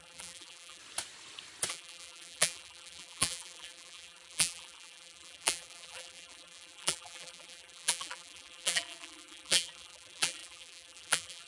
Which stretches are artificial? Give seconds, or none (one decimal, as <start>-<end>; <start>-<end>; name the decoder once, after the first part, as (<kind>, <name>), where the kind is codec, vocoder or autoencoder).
0.0-0.8 (vocoder, BigVGAN v2); 1.7-11.5